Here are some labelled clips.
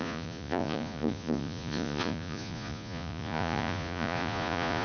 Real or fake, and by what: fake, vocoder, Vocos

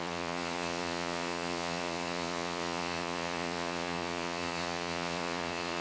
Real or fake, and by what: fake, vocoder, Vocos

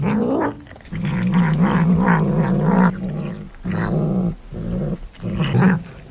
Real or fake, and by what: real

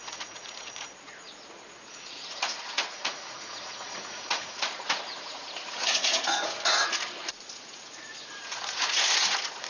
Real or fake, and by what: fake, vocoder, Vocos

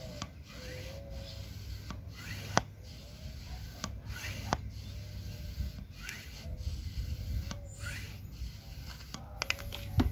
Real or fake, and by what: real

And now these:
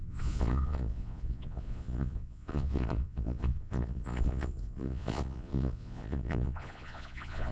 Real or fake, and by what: fake, vocoder, Vocos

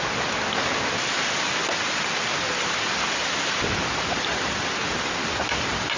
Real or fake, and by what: real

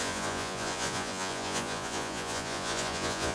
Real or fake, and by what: fake, vocoder, Vocos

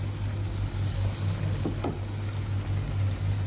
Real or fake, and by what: real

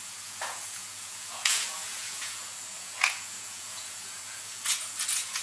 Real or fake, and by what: fake, vocoder, Vocos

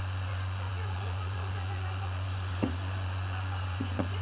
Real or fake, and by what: fake, vocoder, Vocos